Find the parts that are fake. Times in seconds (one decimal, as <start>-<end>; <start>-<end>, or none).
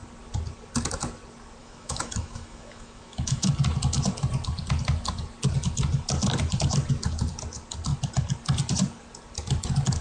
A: 1.6-3.5